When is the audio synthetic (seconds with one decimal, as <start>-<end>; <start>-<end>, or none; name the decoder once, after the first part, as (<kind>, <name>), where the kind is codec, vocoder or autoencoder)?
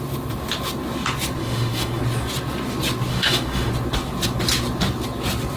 1.4-2.0 (autoencoder, DAC-VAE); 3.1-3.7